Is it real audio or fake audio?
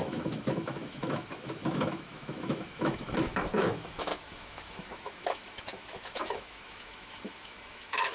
fake